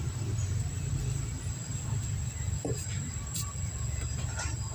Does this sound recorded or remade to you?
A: recorded